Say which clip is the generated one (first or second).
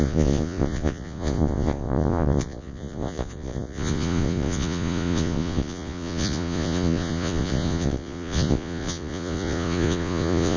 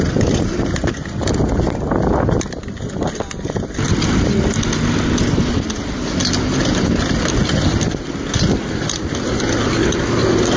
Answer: first